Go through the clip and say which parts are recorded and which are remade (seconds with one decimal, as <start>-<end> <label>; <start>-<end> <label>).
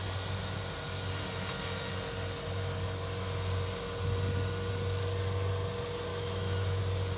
0.0-6.1 recorded; 6.1-6.8 remade; 6.8-7.2 recorded